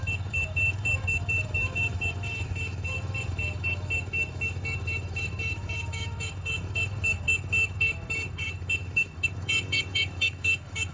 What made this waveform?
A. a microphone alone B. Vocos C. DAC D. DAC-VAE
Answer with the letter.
D